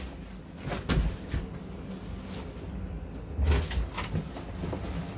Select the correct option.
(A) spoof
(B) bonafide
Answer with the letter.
B